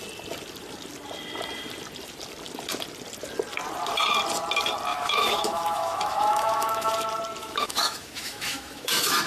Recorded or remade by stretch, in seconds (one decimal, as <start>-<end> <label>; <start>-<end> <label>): 0.0-4.9 recorded; 4.9-6.9 remade; 6.9-7.4 recorded; 7.4-9.3 remade